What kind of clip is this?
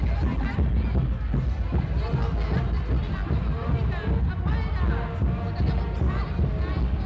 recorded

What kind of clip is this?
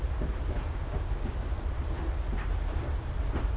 recorded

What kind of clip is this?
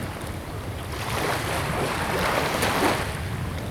recorded